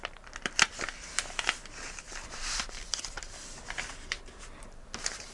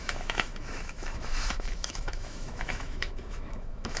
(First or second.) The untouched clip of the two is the first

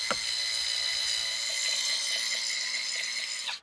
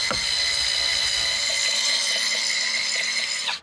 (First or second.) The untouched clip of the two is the first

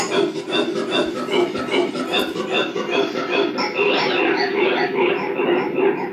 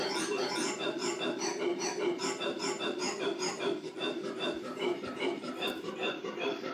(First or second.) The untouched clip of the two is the first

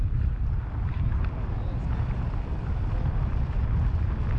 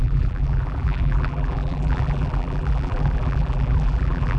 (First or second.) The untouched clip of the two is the first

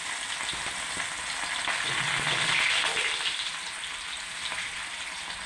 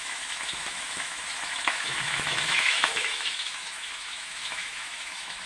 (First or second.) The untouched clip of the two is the first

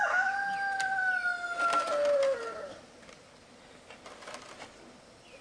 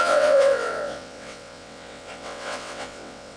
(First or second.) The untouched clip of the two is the first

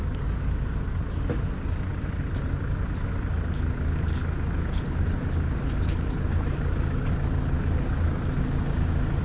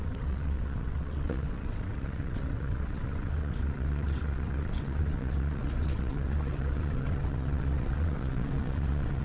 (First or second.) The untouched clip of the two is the first